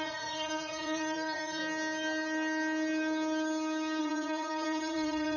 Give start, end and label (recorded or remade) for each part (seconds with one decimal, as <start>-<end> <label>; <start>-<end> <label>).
0.0-1.6 remade; 1.6-4.0 recorded; 4.0-5.4 remade